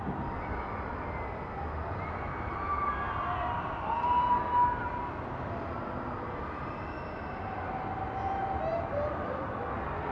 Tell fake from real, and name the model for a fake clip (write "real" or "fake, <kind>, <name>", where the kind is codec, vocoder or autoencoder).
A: real